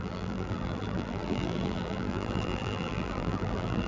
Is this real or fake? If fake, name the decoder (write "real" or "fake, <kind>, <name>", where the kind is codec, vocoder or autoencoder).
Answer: fake, vocoder, BigVGAN v2